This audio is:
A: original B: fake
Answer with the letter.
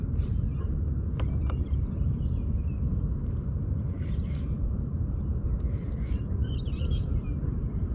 B